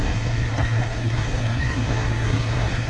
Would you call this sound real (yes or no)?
no